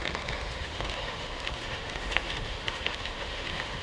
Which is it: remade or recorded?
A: remade